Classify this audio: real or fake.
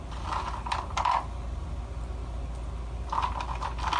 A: real